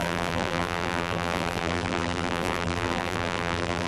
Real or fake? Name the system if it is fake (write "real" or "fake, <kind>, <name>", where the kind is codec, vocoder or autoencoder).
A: fake, vocoder, BigVGAN v2